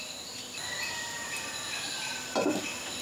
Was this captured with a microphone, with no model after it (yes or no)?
yes